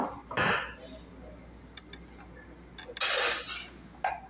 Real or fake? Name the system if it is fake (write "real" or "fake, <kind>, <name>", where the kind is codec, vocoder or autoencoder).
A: real